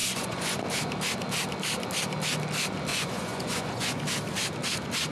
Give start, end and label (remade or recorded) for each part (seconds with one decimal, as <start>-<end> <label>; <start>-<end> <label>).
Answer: 0.0-0.6 remade; 0.6-2.9 recorded; 2.9-4.0 remade; 4.0-5.1 recorded